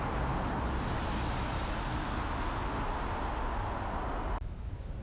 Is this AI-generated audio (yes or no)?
no